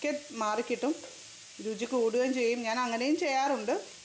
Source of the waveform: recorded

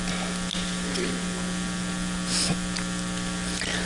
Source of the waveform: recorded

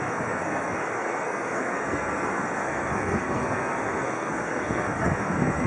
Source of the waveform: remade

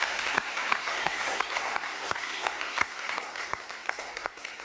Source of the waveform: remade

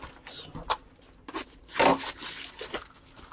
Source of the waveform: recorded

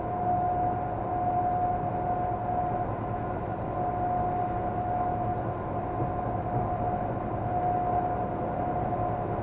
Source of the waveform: recorded